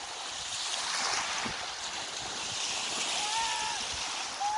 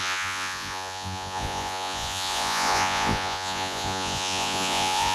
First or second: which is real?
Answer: first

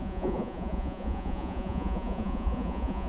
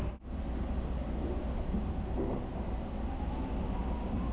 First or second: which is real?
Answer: second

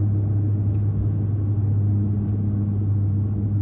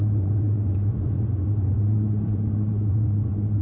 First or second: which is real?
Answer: first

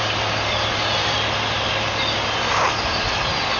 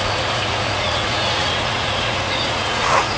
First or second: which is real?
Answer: first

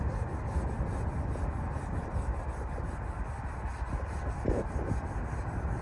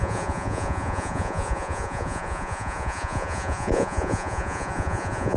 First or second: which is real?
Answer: first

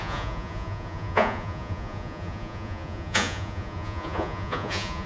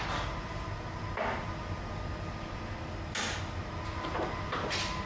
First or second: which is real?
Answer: second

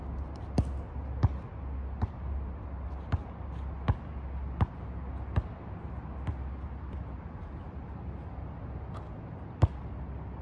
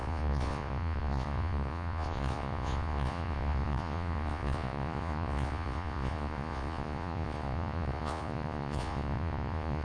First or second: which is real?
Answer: first